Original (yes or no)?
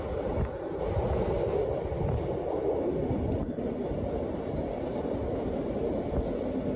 yes